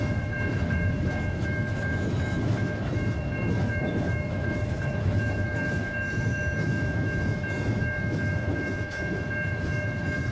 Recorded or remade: remade